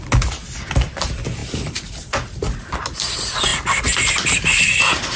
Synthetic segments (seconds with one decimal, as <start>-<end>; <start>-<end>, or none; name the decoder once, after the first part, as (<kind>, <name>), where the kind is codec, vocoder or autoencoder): none